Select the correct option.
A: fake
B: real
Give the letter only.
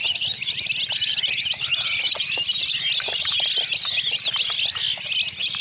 B